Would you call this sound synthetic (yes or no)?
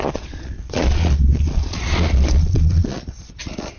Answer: yes